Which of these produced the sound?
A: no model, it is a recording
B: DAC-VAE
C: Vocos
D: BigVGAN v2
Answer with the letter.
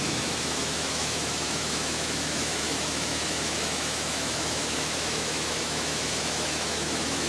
B